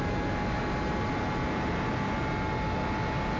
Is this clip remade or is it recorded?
recorded